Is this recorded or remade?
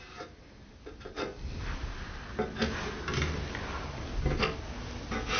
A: recorded